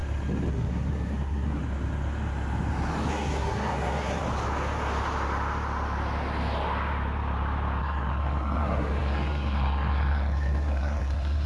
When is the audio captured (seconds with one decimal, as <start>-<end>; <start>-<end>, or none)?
0.0-0.5; 1.6-3.1; 4.2-7.8

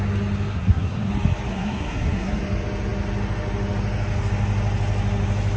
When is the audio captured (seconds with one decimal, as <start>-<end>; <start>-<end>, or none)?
0.0-0.5; 1.1-1.5; 2.4-5.6

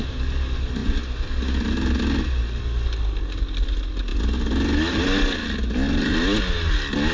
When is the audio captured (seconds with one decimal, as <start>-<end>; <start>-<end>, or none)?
0.0-7.1

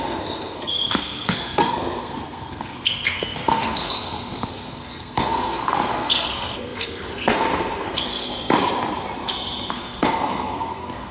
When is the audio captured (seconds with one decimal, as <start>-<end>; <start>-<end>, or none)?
8.3-9.7

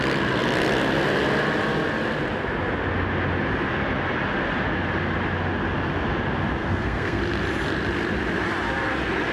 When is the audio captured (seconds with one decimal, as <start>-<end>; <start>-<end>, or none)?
0.0-6.6; 7.2-9.3

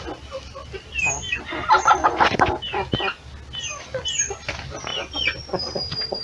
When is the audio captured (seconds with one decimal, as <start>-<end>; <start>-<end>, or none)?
0.0-6.2

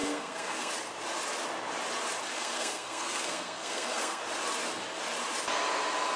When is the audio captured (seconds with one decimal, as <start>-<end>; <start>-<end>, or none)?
0.7-2.3; 4.2-6.2